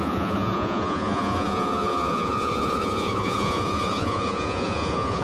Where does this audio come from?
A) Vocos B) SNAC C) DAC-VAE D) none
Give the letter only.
A